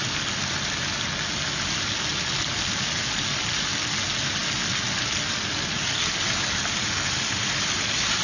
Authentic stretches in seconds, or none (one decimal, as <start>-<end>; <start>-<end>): 0.0-8.2